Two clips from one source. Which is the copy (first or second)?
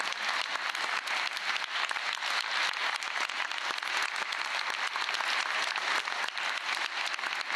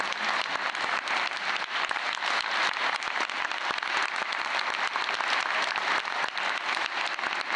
second